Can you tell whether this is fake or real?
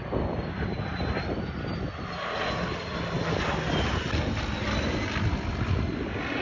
real